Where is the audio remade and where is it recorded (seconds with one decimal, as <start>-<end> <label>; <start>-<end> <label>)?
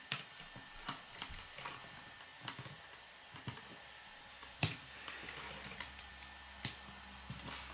0.0-2.3 recorded; 2.3-3.6 remade; 3.6-4.4 recorded; 4.4-6.1 remade; 6.1-7.7 recorded